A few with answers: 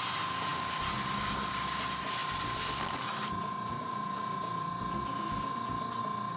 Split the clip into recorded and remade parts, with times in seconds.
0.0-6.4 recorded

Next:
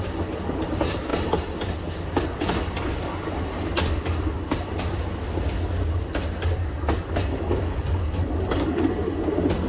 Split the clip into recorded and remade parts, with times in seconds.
0.0-7.3 recorded; 7.3-8.8 remade; 8.8-9.7 recorded

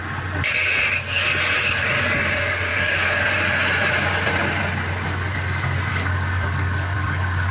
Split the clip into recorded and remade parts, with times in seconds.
0.0-2.7 recorded; 2.7-3.3 remade; 3.3-5.9 recorded; 5.9-7.5 remade